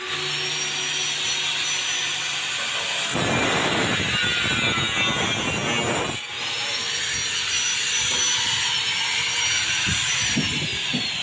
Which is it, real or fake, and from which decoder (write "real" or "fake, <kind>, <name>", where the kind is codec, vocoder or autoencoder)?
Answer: real